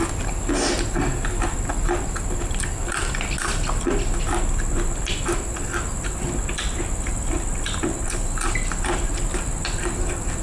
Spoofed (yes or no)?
no